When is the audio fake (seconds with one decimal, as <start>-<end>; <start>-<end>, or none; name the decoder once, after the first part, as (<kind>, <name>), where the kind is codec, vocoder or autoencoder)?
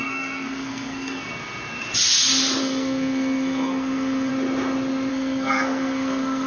0.0-1.3 (codec, SNAC); 2.6-4.3; 5.1-6.5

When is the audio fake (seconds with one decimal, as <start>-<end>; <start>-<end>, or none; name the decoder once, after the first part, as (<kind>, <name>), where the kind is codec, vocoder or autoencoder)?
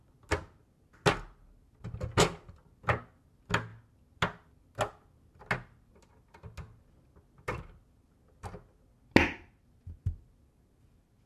none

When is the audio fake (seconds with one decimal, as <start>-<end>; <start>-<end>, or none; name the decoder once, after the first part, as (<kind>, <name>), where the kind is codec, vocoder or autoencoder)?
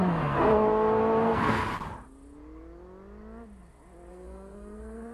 0.0-1.6 (codec, SNAC); 4.1-5.1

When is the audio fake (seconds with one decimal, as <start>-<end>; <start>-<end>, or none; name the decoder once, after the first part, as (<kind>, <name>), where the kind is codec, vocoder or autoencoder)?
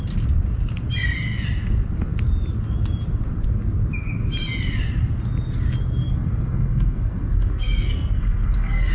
6.0-8.9 (codec, SNAC)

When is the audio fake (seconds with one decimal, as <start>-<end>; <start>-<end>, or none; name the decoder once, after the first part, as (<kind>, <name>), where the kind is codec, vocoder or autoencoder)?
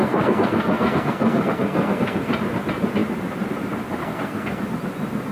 0.0-2.3 (codec, SNAC); 4.0-4.6